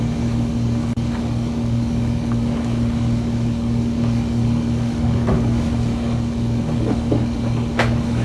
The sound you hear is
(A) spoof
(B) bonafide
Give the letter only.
A